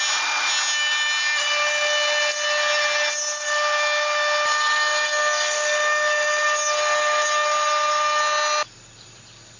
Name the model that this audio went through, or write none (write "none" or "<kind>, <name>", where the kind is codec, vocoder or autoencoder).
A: none